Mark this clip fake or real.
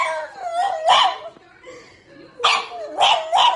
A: real